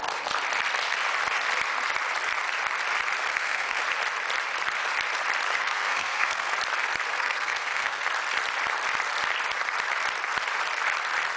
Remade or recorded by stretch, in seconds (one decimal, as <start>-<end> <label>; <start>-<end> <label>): 0.0-3.3 recorded; 3.3-3.8 remade; 3.8-5.6 recorded; 5.6-6.5 remade; 6.5-7.1 recorded; 7.1-8.0 remade; 8.0-11.4 recorded